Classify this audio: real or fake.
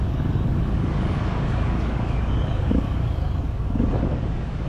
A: fake